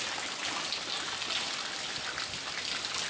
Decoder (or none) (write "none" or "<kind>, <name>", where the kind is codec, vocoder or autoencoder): none